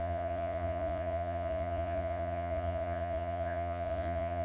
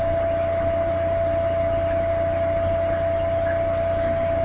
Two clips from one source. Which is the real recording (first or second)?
second